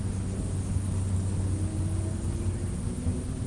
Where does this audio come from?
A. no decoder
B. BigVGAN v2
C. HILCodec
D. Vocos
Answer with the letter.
A